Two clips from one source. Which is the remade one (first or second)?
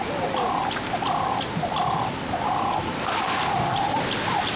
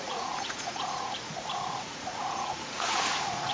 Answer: second